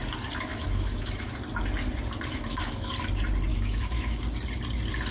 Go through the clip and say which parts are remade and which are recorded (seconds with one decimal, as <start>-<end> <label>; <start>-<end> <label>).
0.0-0.5 recorded; 0.5-1.3 remade; 1.3-2.3 recorded; 2.3-2.9 remade; 2.9-3.5 recorded; 3.5-4.2 remade; 4.2-5.1 recorded